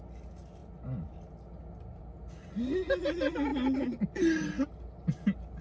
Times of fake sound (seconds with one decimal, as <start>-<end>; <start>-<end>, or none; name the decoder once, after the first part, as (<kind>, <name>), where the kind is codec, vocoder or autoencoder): none